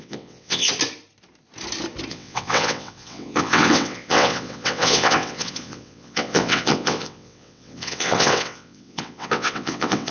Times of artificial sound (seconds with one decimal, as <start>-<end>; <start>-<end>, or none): 0.0-0.7; 2.1-10.1